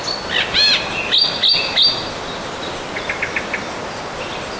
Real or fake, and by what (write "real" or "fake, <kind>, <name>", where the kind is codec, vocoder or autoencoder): real